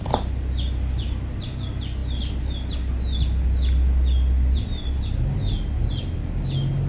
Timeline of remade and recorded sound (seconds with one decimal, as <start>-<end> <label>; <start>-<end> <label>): 0.0-6.9 recorded